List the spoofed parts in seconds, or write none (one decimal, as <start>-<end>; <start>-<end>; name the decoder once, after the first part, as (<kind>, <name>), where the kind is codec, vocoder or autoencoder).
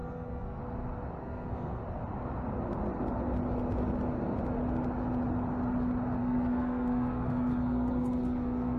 0.0-0.6 (codec, SNAC); 1.2-1.8; 6.2-8.8